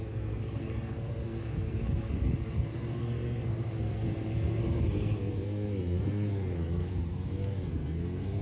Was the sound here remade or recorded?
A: remade